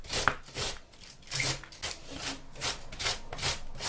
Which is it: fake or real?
real